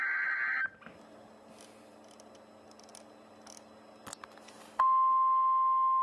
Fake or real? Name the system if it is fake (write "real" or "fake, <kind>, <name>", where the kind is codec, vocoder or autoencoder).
real